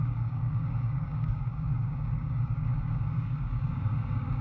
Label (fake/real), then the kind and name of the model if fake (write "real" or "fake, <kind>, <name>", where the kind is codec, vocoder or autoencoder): fake, codec, DAC